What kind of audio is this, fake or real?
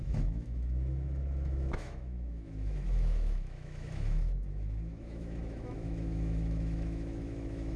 fake